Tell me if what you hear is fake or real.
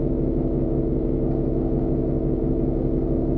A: real